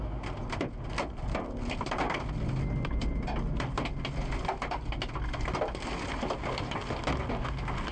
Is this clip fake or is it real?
real